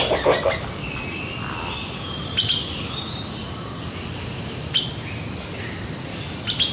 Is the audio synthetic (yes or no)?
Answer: no